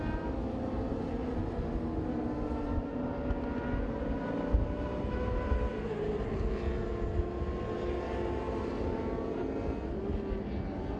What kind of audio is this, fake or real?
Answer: real